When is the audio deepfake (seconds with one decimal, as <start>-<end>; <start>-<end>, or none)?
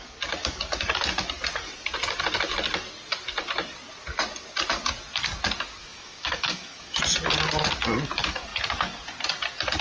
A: 5.8-7.0